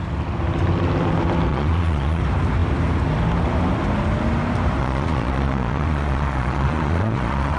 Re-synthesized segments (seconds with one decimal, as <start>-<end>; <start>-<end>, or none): 1.5-2.2; 4.8-7.6